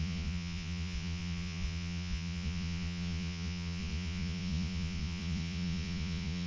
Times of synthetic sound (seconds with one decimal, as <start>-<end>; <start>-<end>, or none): 0.0-6.5

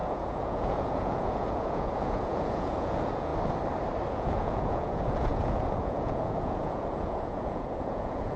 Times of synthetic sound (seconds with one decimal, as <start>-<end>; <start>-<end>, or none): 0.0-3.3; 4.1-8.4

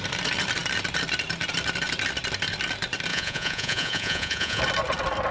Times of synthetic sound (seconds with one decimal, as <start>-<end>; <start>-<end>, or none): 3.1-4.6

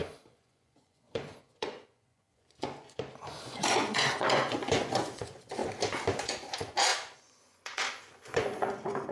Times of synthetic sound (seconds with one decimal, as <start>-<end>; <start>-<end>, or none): 0.0-5.6; 6.2-9.1

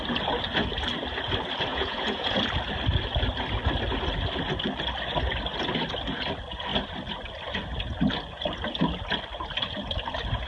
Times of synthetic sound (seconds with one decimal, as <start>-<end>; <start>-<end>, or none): 1.7-2.4